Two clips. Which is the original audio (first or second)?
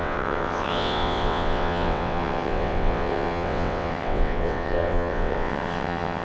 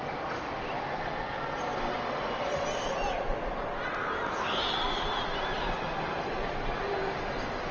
second